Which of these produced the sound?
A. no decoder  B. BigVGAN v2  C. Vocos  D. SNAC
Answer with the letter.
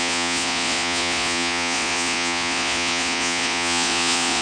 C